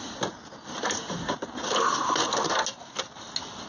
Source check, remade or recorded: recorded